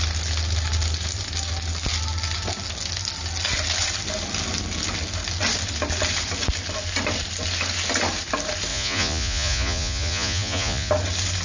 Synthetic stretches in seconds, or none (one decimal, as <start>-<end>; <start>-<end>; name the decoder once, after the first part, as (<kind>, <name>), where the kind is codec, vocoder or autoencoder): 8.7-10.9 (vocoder, Vocos)